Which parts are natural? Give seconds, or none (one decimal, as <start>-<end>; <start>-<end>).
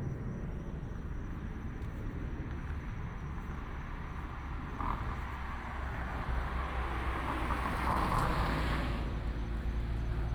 0.0-1.2; 2.2-10.3